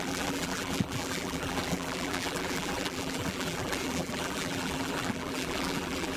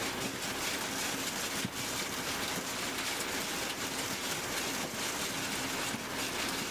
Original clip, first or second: second